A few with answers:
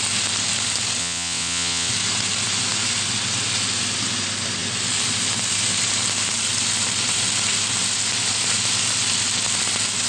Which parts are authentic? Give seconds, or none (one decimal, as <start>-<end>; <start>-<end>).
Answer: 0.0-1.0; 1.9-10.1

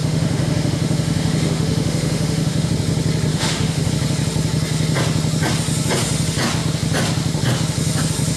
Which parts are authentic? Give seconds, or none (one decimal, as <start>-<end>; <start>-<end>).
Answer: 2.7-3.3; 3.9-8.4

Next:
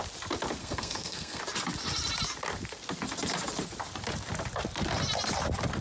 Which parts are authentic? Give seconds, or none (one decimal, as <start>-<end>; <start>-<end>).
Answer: 0.0-0.6; 1.4-5.8